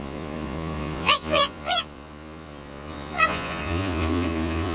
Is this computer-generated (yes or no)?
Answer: yes